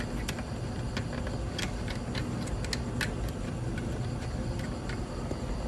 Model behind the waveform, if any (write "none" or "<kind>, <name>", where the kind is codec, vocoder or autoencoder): none